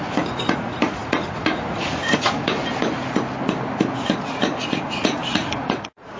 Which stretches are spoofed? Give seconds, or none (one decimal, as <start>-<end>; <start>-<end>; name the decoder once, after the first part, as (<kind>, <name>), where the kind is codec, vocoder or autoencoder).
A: 0.0-2.6 (vocoder, Vocos); 4.0-6.2